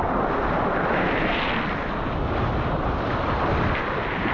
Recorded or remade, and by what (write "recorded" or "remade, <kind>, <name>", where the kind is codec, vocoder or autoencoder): recorded